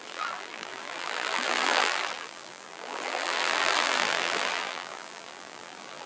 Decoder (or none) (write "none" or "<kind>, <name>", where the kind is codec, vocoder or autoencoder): vocoder, BigVGAN v2